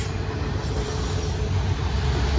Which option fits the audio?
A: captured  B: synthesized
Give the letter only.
A